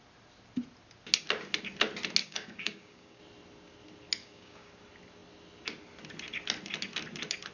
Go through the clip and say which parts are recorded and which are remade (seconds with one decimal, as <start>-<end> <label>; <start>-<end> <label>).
0.0-2.2 recorded; 2.2-3.2 remade; 3.2-4.2 recorded; 4.2-4.7 remade; 4.7-7.5 recorded